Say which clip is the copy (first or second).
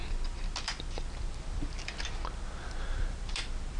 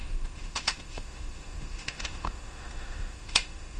second